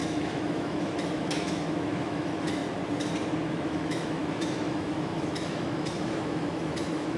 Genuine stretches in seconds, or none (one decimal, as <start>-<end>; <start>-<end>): 2.6-3.5